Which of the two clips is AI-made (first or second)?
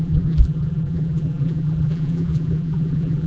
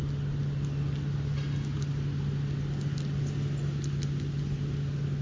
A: first